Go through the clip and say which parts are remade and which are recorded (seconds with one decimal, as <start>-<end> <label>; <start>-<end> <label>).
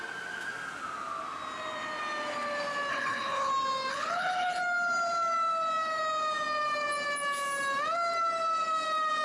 0.0-2.9 recorded; 2.9-3.5 remade; 3.5-3.9 recorded; 3.9-4.6 remade; 4.6-9.2 recorded